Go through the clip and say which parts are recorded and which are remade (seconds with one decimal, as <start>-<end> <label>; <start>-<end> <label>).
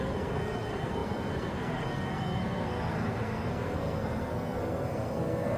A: 0.0-5.6 remade